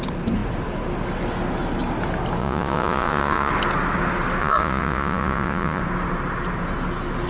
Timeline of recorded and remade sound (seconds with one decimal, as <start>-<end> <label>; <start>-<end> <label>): 0.0-2.4 recorded; 2.4-3.5 remade; 3.5-4.4 recorded; 4.4-5.8 remade; 5.8-7.3 recorded